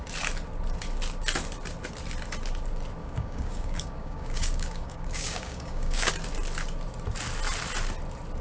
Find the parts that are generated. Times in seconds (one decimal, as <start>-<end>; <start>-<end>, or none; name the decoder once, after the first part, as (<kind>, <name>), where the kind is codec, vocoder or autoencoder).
3.0-6.1 (codec, DAC)